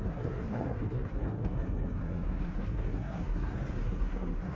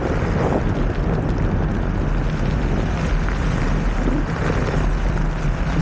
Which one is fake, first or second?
first